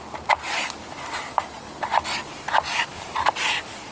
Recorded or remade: recorded